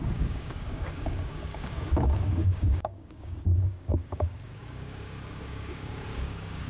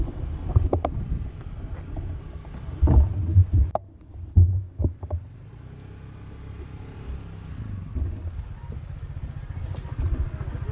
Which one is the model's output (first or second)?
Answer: first